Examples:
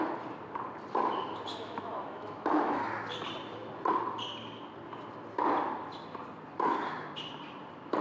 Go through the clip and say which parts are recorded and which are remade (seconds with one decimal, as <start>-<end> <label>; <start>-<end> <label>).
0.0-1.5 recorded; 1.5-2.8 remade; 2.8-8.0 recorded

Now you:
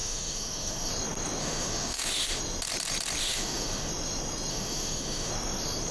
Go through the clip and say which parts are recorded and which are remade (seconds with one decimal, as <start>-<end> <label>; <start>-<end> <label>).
0.0-0.9 remade; 0.9-1.4 recorded; 1.4-2.4 remade; 2.4-3.2 recorded; 3.2-3.9 remade; 3.9-4.5 recorded; 4.5-5.3 remade; 5.3-5.9 recorded

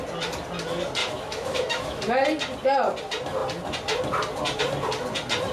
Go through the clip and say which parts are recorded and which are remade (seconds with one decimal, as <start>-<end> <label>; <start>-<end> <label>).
0.0-1.0 recorded; 1.0-2.0 remade; 2.0-5.5 recorded

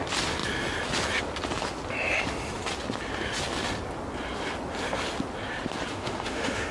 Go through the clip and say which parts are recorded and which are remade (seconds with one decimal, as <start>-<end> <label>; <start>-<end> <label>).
0.0-5.9 recorded; 5.9-6.7 remade

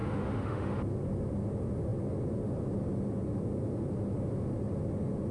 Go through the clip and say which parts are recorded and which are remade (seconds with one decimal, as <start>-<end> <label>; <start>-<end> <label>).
0.0-0.7 remade; 0.7-5.3 recorded

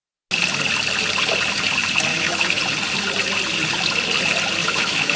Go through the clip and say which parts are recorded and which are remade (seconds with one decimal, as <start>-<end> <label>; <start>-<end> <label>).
0.0-2.1 recorded; 2.1-2.6 remade; 2.6-4.6 recorded; 4.6-5.2 remade

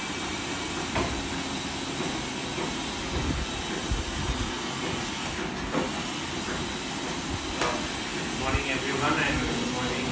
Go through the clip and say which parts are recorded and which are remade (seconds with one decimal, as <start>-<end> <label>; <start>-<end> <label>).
0.0-10.1 recorded